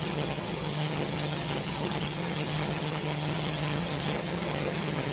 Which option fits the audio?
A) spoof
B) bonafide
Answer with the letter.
A